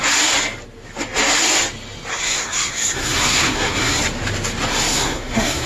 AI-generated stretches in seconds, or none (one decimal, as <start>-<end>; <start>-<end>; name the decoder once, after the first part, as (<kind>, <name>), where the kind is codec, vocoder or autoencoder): 2.1-4.0 (codec, SNAC); 4.7-5.7